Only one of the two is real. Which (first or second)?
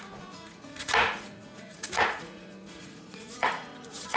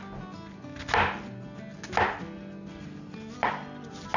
second